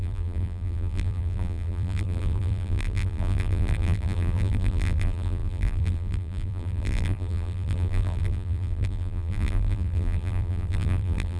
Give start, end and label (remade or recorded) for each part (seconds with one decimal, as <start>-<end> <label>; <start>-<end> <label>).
0.0-11.4 remade